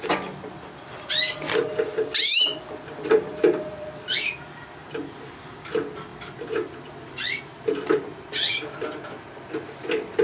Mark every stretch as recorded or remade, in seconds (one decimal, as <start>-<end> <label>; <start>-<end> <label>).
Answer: 0.0-10.2 recorded